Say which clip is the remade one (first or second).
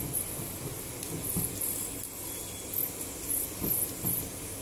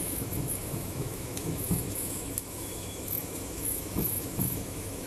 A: second